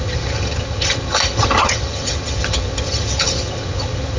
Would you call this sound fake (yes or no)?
yes